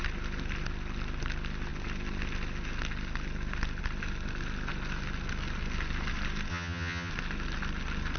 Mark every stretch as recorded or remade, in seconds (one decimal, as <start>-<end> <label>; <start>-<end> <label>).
0.0-6.5 recorded; 6.5-7.1 remade; 7.1-8.2 recorded